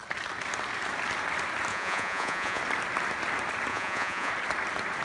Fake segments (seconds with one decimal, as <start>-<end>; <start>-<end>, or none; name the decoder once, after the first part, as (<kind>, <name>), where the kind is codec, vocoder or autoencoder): 1.7-2.6 (vocoder, Vocos); 3.7-4.3